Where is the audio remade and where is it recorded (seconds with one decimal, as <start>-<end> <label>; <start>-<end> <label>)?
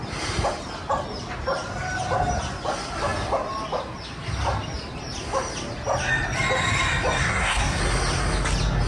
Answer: 0.0-7.2 recorded; 7.2-7.8 remade; 7.8-8.9 recorded